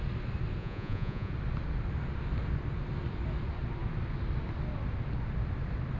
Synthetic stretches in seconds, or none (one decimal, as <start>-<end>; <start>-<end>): 0.6-1.3

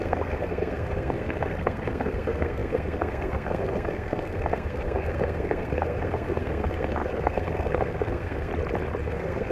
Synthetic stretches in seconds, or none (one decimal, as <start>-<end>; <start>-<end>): 0.0-8.5; 9.0-9.5

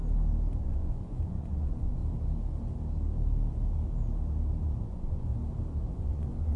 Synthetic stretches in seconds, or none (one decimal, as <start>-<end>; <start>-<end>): 0.6-2.0; 4.8-5.3; 5.9-6.6

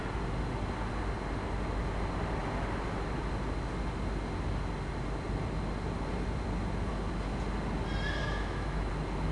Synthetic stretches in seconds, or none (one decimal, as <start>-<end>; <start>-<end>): 8.2-8.9